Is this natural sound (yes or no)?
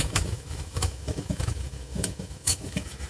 no